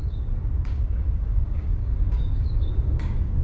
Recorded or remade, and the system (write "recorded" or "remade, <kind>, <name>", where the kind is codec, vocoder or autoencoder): remade, codec, DAC